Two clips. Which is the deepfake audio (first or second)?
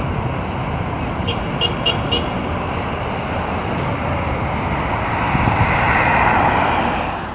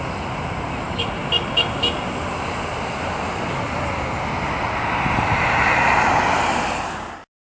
first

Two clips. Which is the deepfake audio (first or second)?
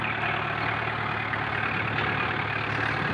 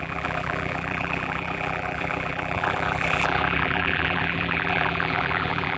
second